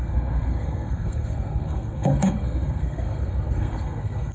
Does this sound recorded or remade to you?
remade